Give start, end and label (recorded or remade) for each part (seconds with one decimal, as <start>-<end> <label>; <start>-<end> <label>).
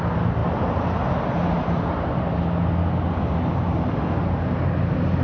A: 0.0-5.2 recorded